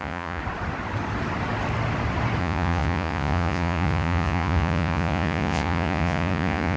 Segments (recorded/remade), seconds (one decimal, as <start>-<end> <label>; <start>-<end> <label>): 0.0-0.4 remade; 0.4-2.4 recorded; 2.4-6.8 remade